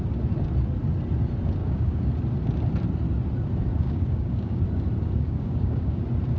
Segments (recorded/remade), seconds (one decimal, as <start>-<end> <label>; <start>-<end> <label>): 0.0-1.6 recorded; 1.6-2.1 remade; 2.1-3.7 recorded; 3.7-4.6 remade; 4.6-5.0 recorded; 5.0-6.0 remade; 6.0-6.4 recorded